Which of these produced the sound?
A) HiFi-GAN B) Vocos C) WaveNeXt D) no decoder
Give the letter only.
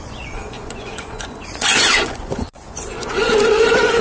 B